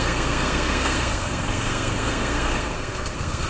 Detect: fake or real fake